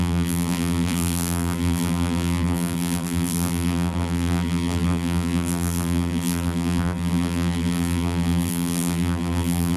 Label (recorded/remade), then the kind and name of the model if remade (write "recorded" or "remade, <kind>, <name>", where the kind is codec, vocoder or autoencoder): remade, vocoder, BigVGAN v2